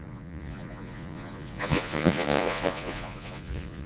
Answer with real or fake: fake